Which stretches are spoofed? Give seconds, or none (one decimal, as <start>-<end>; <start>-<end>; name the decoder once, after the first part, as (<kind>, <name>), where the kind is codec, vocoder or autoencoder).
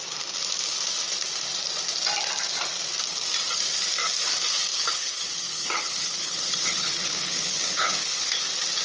4.7-8.4 (codec, HILCodec)